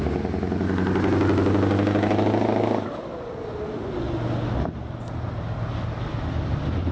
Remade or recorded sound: recorded